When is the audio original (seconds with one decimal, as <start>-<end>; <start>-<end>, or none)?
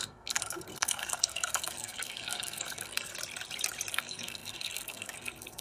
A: 3.1-3.9